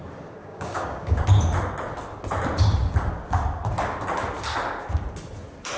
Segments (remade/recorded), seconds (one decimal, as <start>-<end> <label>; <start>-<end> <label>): 0.0-0.4 recorded; 0.4-1.2 remade; 1.2-5.8 recorded